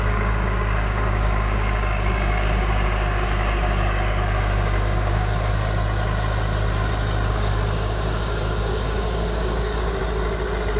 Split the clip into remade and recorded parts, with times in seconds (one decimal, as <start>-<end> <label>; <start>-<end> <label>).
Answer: 0.0-5.5 remade; 5.5-7.3 recorded; 7.3-10.0 remade; 10.0-10.8 recorded